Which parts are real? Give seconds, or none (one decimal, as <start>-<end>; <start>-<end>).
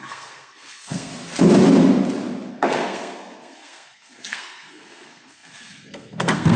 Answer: 1.1-2.5